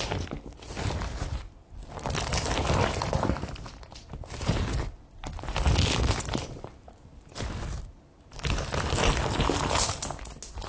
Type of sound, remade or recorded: recorded